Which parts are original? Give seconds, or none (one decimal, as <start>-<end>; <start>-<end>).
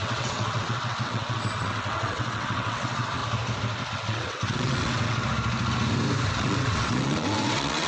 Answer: 3.2-3.9; 5.2-6.3